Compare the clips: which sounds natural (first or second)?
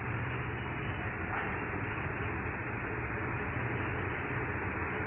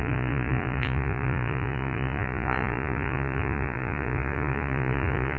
first